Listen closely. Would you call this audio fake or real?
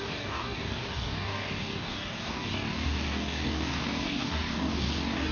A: fake